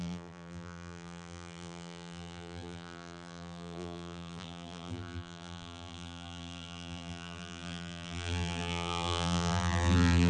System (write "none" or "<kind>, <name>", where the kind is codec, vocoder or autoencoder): vocoder, BigVGAN v2